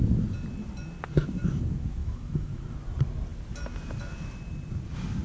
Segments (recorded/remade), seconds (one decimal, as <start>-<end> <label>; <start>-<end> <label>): 0.0-2.0 recorded; 2.0-2.6 remade; 2.6-5.2 recorded